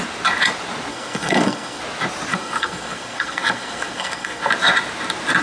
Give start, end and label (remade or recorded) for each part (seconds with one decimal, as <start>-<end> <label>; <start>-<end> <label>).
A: 0.0-0.9 recorded; 0.9-1.8 remade; 1.8-2.3 recorded; 2.3-4.5 remade; 4.5-5.4 recorded

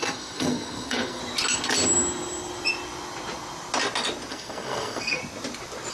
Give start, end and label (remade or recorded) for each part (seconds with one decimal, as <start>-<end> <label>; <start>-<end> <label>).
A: 0.0-1.2 remade; 1.2-4.3 recorded; 4.3-5.2 remade; 5.2-5.9 recorded

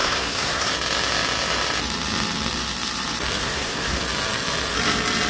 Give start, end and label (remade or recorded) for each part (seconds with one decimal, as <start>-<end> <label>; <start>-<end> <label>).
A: 0.0-0.7 remade; 0.7-3.4 recorded; 3.4-4.0 remade; 4.0-5.3 recorded

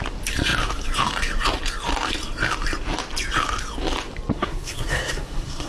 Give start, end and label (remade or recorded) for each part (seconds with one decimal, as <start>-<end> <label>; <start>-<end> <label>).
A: 0.0-4.3 recorded; 4.3-5.7 remade

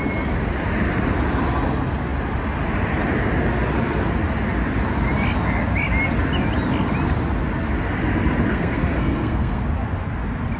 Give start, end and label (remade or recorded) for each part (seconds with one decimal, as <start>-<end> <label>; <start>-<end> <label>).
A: 0.0-8.5 recorded; 8.5-9.6 remade; 9.6-10.6 recorded

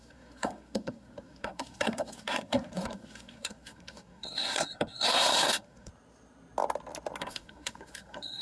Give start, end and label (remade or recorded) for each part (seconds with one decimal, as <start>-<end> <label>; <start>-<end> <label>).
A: 0.0-5.9 remade; 5.9-7.2 recorded; 7.2-8.4 remade